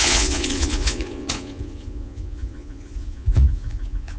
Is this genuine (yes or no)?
no